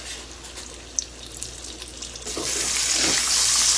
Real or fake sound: real